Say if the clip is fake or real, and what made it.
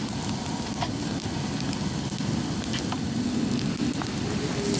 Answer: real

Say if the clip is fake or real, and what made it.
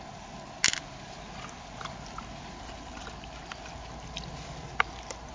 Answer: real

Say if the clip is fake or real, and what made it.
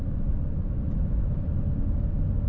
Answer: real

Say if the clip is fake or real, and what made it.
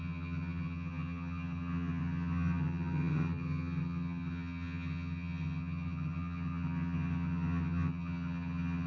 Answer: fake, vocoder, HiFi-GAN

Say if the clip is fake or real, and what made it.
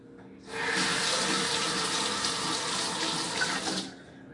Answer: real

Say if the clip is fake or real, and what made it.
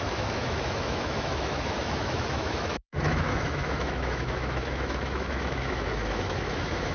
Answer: fake, autoencoder, DAC-VAE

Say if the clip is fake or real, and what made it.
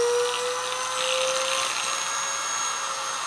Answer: real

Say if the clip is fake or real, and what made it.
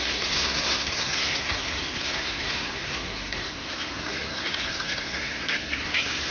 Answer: fake, codec, SNAC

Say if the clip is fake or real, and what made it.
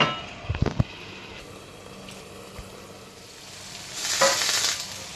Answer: real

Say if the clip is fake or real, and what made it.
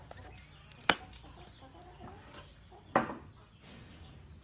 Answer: real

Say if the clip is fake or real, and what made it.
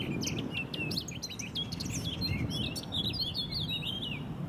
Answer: real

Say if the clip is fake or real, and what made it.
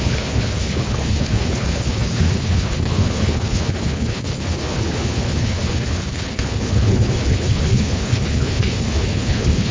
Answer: fake, codec, HILCodec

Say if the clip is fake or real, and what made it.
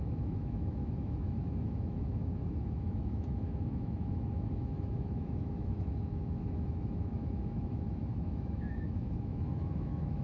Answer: fake, autoencoder, DAC-VAE